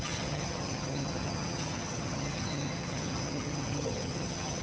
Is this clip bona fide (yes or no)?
no